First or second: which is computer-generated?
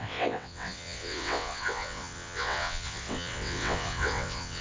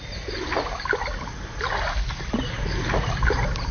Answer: first